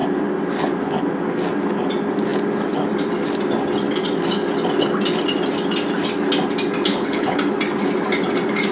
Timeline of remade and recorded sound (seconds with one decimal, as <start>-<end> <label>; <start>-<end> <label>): 0.0-6.9 recorded; 6.9-7.4 remade; 7.4-8.7 recorded